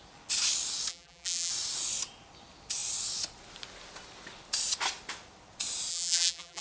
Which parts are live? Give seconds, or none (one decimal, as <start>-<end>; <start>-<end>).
0.0-0.9; 1.5-5.9